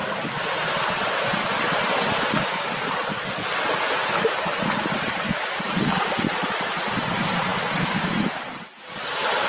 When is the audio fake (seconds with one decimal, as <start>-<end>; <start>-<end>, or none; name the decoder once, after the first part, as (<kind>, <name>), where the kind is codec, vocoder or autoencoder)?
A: none